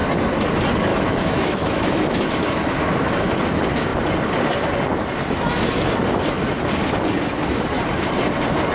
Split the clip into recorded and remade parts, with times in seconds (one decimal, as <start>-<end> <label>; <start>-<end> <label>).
0.0-0.9 recorded; 0.9-3.3 remade; 3.3-8.7 recorded